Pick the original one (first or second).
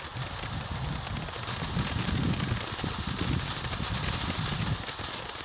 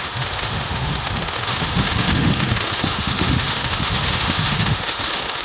first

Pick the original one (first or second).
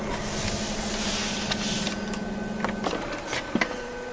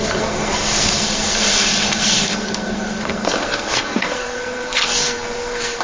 first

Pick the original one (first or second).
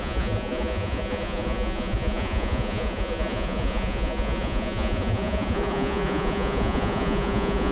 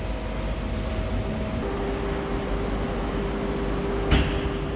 second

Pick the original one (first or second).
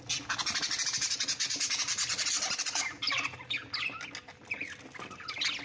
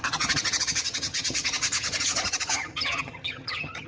first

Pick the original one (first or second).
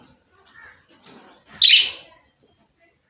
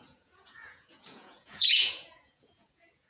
first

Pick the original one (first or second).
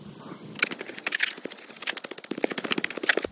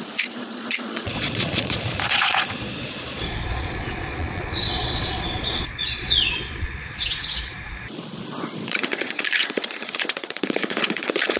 first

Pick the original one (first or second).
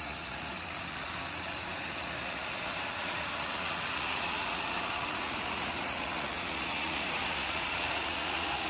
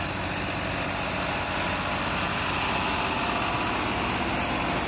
second